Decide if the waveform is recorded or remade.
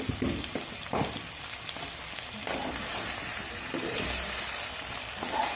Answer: recorded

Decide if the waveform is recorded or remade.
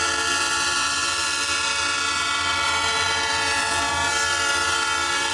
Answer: remade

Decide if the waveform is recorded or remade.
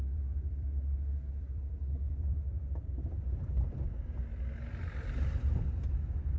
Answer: remade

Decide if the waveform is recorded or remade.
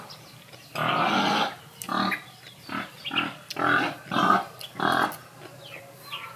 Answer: recorded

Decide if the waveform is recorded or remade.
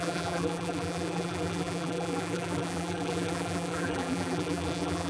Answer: remade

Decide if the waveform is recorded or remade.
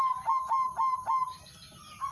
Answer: recorded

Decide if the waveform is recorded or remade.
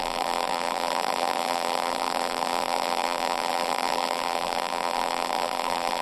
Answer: remade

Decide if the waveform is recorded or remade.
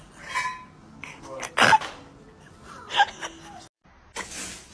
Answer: recorded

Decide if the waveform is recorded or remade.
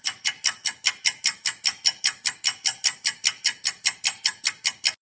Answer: recorded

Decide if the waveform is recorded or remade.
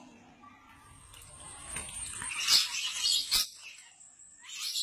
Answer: recorded